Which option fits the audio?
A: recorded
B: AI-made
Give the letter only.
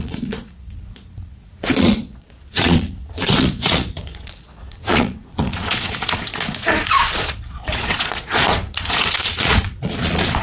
B